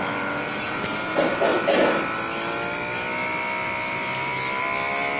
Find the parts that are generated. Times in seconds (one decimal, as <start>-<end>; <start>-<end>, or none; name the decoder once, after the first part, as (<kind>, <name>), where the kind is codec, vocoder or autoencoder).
none